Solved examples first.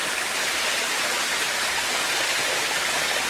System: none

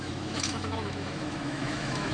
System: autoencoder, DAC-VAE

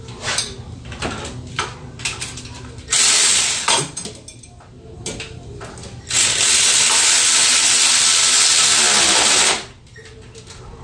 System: none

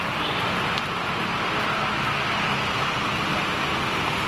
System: none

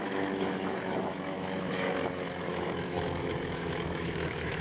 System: autoencoder, DAC-VAE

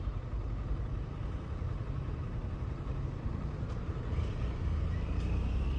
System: none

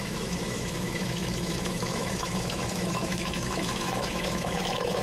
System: autoencoder, DAC-VAE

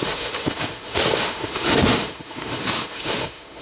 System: autoencoder, DAC-VAE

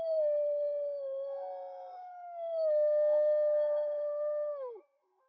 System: autoencoder, DAC-VAE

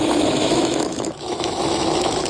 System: autoencoder, DAC-VAE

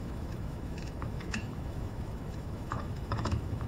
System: autoencoder, DAC-VAE